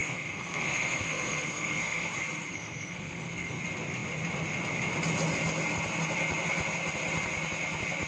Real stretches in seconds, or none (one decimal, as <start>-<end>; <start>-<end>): 2.1-2.5; 3.6-8.1

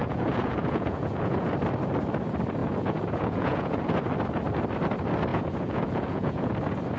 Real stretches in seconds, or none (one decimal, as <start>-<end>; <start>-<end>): 1.5-2.6; 3.9-5.3; 6.5-7.0

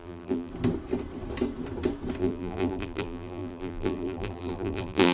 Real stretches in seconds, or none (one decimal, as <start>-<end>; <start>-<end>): 0.5-2.2

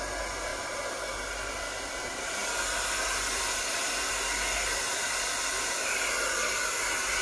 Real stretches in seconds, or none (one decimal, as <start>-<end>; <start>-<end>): 0.0-7.2

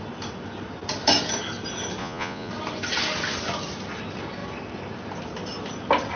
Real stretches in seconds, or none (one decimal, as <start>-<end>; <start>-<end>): 0.0-2.0; 2.5-6.2

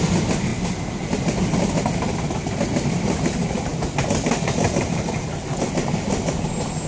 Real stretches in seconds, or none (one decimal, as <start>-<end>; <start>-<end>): 0.0-6.9